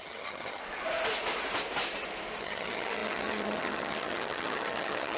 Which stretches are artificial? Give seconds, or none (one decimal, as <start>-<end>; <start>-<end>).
0.0-0.6; 2.4-5.2